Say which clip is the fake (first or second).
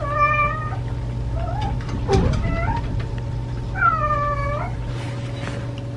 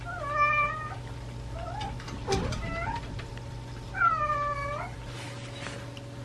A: first